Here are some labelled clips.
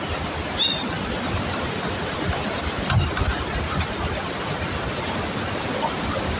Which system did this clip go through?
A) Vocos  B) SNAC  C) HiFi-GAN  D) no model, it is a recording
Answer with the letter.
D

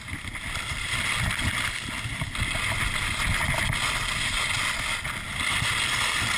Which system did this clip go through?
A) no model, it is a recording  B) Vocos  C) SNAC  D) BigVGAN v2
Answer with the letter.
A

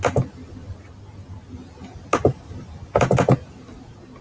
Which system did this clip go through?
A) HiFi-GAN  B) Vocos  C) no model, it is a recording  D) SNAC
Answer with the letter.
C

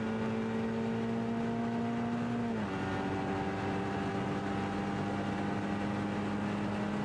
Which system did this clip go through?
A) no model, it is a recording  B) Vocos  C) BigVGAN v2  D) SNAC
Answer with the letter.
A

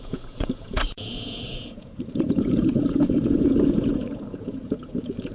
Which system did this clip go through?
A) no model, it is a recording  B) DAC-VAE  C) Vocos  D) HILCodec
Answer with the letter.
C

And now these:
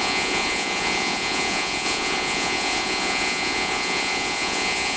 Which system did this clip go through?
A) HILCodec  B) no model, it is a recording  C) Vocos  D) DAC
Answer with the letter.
C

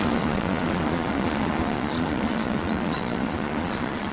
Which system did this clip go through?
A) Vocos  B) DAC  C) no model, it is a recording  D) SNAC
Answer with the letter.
A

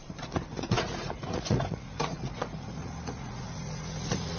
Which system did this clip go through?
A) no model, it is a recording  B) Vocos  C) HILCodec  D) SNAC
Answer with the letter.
B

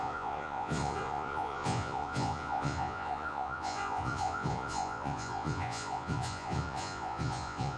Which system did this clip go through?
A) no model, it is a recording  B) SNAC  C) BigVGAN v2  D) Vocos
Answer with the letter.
D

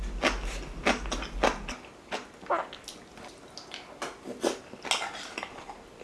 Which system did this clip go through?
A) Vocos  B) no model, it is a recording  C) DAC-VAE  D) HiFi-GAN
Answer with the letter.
B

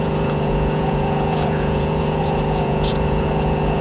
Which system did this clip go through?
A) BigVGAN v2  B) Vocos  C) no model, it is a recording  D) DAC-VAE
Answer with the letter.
B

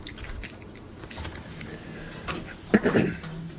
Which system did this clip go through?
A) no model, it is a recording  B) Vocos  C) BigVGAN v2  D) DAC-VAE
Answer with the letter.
A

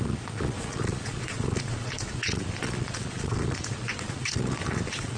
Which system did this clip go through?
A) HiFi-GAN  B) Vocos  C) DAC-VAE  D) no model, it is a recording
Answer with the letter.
B